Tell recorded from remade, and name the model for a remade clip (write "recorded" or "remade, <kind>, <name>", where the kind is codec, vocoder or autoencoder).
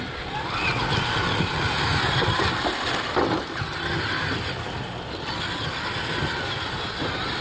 recorded